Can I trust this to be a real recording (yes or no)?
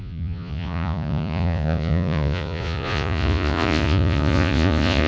no